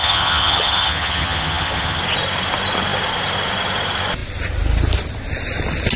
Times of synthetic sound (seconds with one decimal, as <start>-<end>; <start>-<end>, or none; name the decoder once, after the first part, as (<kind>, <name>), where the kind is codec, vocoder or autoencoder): 0.0-2.0 (vocoder, HiFi-GAN)